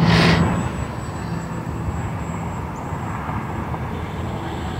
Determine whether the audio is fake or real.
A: real